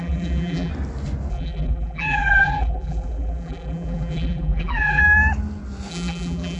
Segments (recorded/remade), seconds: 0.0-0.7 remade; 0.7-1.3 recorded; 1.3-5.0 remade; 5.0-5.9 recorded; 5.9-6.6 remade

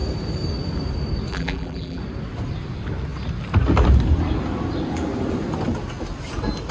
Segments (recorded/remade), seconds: 0.0-1.3 recorded; 1.3-2.0 remade; 2.0-6.7 recorded

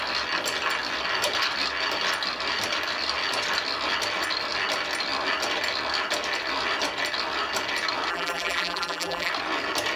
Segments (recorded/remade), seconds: 0.0-8.1 recorded; 8.1-9.3 remade; 9.3-10.0 recorded

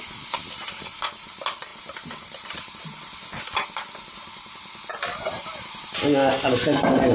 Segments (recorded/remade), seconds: 0.0-1.7 recorded; 1.7-2.7 remade; 2.7-4.9 recorded; 4.9-5.9 remade; 5.9-7.1 recorded

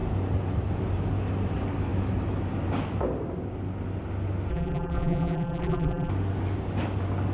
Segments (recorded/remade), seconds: 0.0-4.5 recorded; 4.5-6.1 remade; 6.1-7.3 recorded

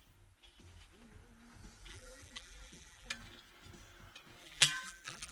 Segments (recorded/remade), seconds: 0.0-1.9 recorded; 1.9-3.1 remade; 3.1-4.4 recorded; 4.4-5.3 remade

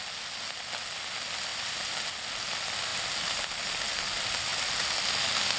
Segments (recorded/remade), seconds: 0.0-1.5 recorded; 1.5-2.1 remade; 2.1-2.9 recorded; 2.9-3.5 remade; 3.5-5.6 recorded